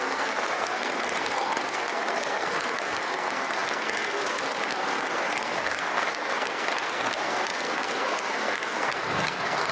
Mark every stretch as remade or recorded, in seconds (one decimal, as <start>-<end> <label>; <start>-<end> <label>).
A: 0.0-9.7 remade

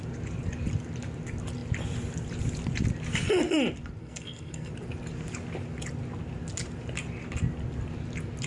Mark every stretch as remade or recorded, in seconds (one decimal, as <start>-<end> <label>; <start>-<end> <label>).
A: 0.0-4.0 recorded; 4.0-4.7 remade; 4.7-8.5 recorded